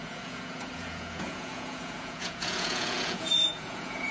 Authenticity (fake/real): fake